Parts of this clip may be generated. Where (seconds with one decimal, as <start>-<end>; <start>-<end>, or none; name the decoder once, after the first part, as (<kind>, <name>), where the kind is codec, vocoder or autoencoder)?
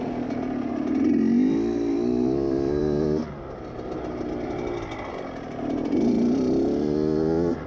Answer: none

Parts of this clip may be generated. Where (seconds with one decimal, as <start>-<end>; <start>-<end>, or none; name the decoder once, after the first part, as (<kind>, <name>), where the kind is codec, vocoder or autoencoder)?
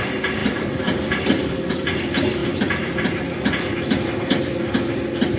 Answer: none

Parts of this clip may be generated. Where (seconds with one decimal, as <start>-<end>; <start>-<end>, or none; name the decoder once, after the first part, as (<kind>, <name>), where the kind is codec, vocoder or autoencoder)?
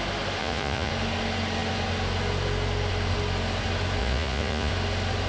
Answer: 0.4-0.9 (vocoder, Vocos); 4.0-4.7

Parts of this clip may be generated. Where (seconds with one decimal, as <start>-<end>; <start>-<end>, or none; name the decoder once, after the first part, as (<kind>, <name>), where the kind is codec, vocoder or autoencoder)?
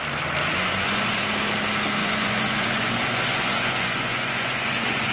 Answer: 0.5-1.2 (vocoder, Vocos); 2.0-5.1